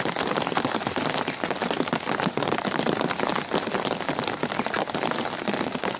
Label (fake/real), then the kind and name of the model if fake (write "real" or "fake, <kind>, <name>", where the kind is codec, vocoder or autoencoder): real